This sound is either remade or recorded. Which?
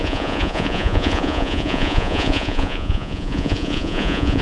remade